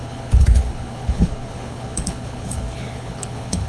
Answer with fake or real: fake